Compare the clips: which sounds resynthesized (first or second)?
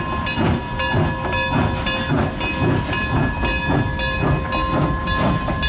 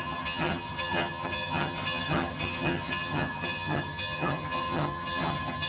second